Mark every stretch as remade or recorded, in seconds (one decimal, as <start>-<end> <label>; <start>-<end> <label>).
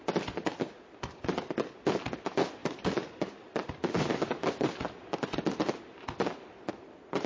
0.0-2.6 recorded; 2.6-4.5 remade; 4.5-7.3 recorded